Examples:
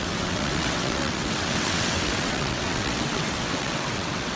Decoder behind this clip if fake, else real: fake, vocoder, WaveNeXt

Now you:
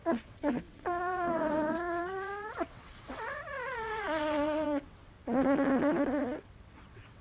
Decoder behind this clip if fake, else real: fake, vocoder, WaveNeXt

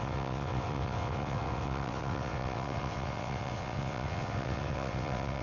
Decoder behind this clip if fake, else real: fake, vocoder, WaveNeXt